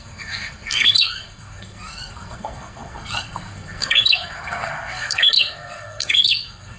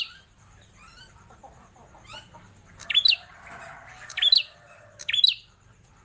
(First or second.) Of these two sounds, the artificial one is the first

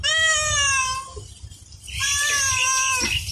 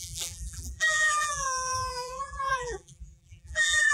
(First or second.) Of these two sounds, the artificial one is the second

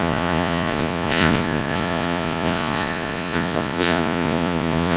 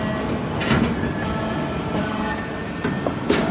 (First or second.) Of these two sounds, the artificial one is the first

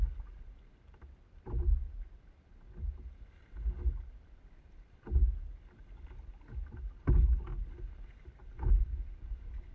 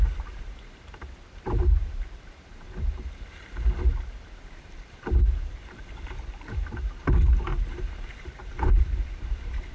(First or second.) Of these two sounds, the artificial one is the second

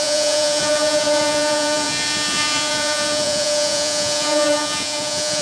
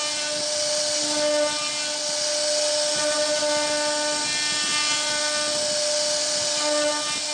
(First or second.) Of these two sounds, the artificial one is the first